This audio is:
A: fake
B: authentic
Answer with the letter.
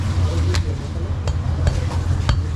B